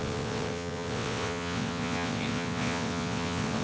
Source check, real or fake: fake